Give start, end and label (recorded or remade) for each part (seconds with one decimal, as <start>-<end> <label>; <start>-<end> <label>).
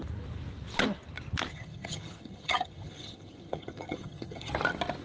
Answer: 0.0-1.5 recorded; 1.5-4.5 remade; 4.5-5.0 recorded